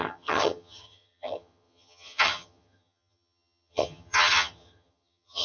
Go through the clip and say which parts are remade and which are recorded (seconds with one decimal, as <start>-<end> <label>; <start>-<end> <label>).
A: 0.0-5.4 remade